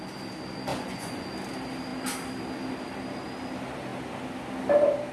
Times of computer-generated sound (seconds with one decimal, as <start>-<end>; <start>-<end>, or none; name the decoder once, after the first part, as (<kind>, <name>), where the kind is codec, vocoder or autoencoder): 0.7-1.3 (vocoder, Vocos)